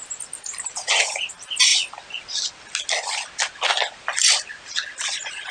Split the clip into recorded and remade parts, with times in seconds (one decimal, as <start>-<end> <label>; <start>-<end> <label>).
0.0-5.5 recorded